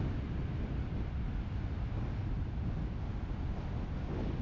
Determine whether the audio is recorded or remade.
recorded